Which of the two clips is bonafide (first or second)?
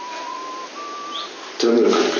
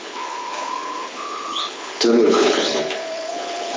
first